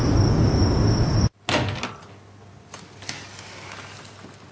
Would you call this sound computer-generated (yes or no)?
no